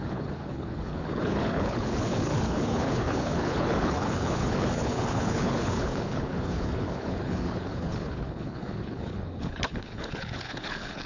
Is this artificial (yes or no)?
yes